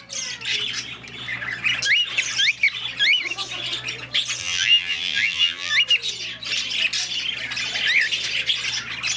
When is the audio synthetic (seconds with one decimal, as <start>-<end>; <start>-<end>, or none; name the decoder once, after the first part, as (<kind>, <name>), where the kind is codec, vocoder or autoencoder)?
4.4-5.7 (vocoder, BigVGAN v2)